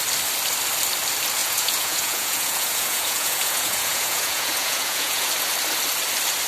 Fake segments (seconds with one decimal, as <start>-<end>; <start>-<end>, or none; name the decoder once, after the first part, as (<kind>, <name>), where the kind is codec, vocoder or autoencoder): 1.4-5.3 (vocoder, Vocos)